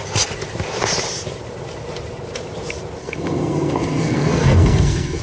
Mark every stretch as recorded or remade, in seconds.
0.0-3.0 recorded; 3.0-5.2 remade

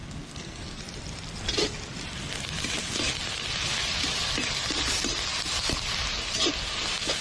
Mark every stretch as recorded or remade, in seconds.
0.0-0.8 remade; 0.8-7.2 recorded

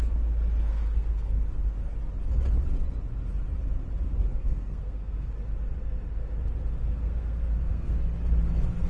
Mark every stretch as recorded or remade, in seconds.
0.0-0.7 recorded; 0.7-1.4 remade; 1.4-4.3 recorded; 4.3-5.3 remade; 5.3-6.9 recorded; 6.9-8.0 remade; 8.0-8.9 recorded

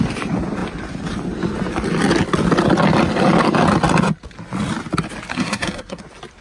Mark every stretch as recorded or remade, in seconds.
0.0-5.3 recorded; 5.3-6.0 remade; 6.0-6.4 recorded

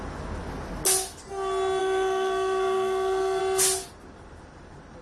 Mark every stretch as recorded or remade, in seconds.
0.0-1.8 recorded; 1.8-3.4 remade; 3.4-5.0 recorded

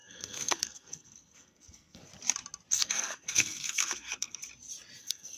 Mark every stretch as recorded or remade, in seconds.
0.0-2.1 remade; 2.1-2.7 recorded; 2.7-4.4 remade; 4.4-5.0 recorded; 5.0-5.4 remade